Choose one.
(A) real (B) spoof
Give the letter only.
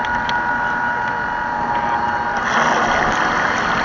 A